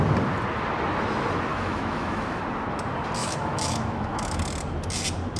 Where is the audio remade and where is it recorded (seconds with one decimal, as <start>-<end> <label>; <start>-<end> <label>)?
0.0-1.5 recorded; 1.5-2.4 remade; 2.4-3.2 recorded; 3.2-4.4 remade; 4.4-5.4 recorded